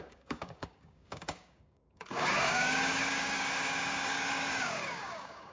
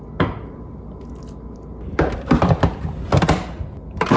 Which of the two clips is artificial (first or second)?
first